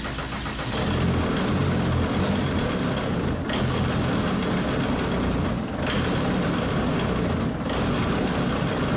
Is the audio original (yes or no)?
yes